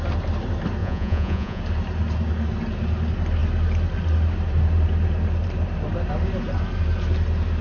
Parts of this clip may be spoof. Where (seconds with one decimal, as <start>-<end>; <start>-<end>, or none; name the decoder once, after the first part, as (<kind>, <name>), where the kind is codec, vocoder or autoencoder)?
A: 0.8-1.6 (vocoder, Vocos)